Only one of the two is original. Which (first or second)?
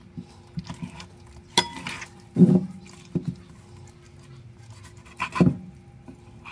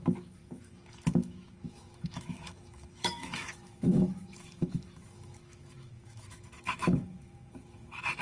first